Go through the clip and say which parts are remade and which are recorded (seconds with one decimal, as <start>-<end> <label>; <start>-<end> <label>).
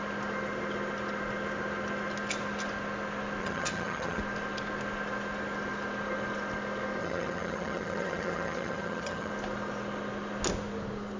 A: 0.0-3.4 recorded; 3.4-4.2 remade; 4.2-7.0 recorded; 7.0-9.3 remade; 9.3-11.2 recorded